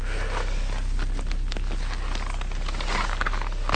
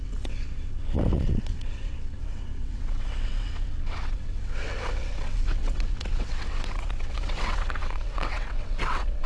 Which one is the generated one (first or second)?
second